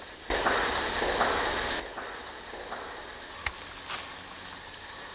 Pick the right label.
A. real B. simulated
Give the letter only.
A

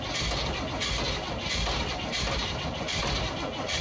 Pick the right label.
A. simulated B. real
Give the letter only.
B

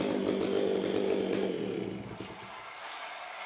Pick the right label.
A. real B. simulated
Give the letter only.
A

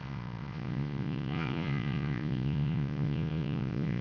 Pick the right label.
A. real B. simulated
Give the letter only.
B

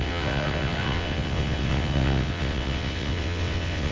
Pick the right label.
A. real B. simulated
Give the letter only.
B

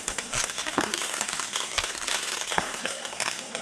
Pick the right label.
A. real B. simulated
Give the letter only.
B